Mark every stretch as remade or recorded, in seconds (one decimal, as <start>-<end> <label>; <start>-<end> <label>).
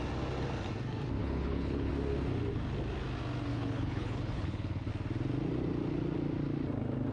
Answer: 0.0-1.2 recorded; 1.2-1.9 remade; 1.9-3.5 recorded; 3.5-4.9 remade; 4.9-7.1 recorded